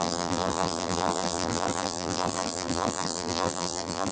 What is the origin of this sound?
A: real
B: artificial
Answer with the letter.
B